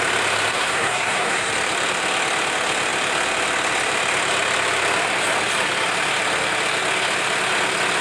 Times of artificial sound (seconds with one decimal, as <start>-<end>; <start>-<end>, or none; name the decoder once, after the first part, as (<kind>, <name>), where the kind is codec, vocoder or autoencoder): 0.5-1.5 (codec, SNAC)